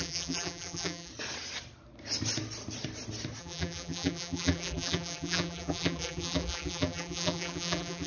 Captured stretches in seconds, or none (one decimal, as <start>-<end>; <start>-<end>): 1.1-3.4